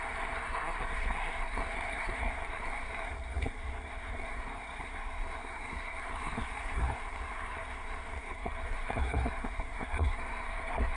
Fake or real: fake